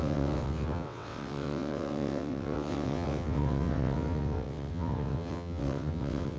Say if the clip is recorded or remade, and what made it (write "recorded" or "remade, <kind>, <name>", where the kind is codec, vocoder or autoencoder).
remade, vocoder, WaveNeXt